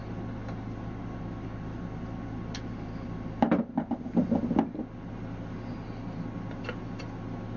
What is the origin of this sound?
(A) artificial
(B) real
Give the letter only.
B